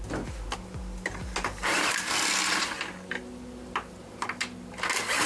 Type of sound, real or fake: real